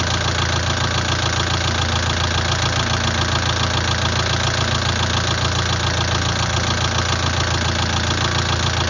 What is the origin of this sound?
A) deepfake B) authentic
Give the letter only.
B